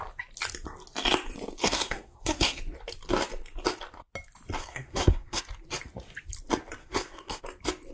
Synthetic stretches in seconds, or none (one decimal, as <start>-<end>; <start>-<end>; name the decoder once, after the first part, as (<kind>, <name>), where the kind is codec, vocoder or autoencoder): 1.6-2.6 (codec, SNAC); 4.6-5.4; 6.8-7.4